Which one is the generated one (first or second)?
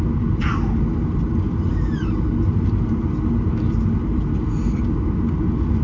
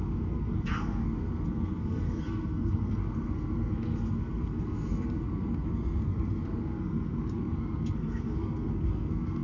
second